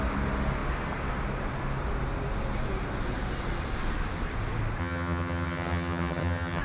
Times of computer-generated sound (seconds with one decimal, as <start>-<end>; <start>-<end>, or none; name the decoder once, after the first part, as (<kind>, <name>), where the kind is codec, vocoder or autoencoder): 4.8-6.6 (vocoder, HiFi-GAN)